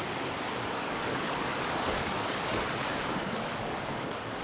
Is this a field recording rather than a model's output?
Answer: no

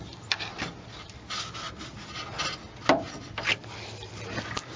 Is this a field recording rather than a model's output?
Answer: yes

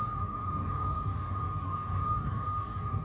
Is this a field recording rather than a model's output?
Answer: no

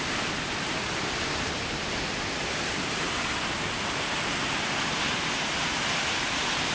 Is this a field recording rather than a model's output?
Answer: yes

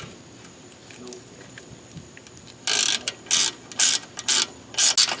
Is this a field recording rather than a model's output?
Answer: yes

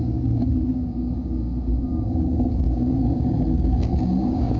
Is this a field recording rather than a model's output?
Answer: no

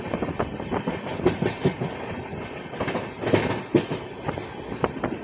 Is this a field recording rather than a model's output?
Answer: yes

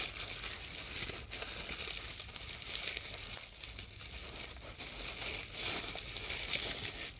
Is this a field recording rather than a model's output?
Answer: yes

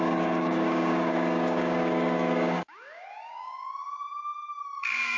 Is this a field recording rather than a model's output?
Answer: no